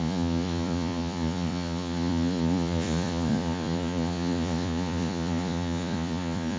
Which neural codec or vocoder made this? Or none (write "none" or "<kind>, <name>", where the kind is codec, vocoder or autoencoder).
vocoder, Vocos